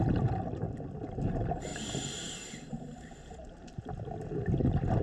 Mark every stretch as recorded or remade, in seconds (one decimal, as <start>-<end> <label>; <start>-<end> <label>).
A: 0.0-1.7 recorded; 1.7-3.9 remade; 3.9-5.0 recorded